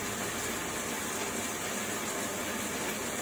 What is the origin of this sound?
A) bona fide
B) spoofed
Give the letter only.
A